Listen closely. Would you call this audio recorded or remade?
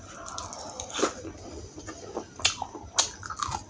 recorded